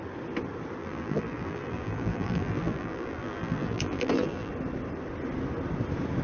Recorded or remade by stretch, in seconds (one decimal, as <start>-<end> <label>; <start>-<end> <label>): 0.0-0.8 recorded; 0.8-4.5 remade; 4.5-6.2 recorded